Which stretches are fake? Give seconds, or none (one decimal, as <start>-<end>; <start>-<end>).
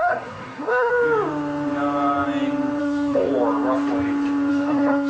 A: 0.0-0.9; 2.8-3.3; 4.5-5.1